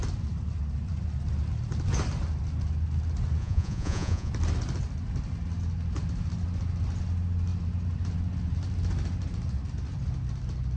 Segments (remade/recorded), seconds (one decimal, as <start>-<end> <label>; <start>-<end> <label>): 0.0-3.4 recorded; 3.4-4.3 remade; 4.3-10.8 recorded

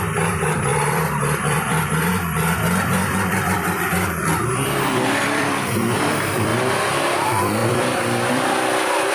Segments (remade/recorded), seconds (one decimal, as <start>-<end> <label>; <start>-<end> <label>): 0.0-9.1 remade